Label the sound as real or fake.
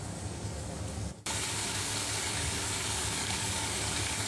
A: fake